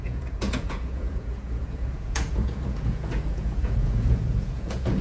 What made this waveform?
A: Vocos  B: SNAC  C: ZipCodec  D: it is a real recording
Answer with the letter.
A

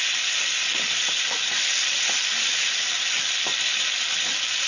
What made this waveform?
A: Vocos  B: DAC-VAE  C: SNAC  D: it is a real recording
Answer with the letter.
D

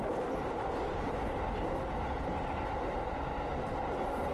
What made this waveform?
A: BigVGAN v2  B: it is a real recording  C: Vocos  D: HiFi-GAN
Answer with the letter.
B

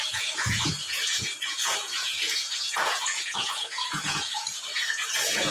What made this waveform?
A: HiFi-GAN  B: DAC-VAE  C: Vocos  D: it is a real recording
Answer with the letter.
C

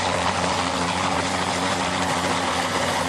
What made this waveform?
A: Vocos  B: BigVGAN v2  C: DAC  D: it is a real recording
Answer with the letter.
A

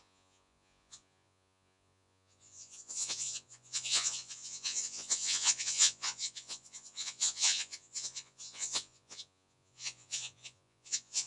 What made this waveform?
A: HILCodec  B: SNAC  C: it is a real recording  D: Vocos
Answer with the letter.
D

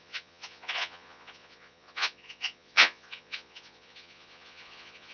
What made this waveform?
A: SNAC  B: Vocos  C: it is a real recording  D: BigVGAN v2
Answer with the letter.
B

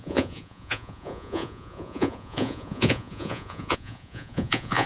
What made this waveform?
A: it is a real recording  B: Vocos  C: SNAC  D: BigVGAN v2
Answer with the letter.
B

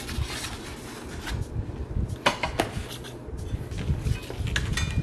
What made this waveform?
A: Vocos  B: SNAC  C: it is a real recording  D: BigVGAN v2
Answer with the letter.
C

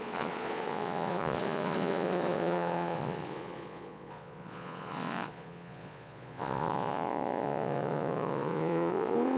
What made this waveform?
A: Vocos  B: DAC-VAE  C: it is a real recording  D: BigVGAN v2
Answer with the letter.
A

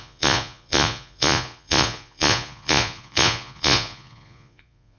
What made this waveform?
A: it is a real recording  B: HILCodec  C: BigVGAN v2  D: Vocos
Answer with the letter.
D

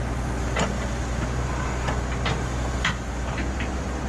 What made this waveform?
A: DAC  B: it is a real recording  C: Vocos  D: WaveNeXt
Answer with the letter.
B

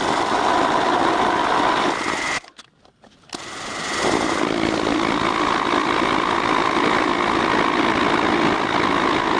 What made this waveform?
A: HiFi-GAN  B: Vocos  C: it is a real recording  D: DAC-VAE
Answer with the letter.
C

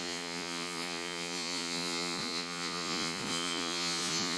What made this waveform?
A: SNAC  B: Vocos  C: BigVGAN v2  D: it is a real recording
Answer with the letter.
B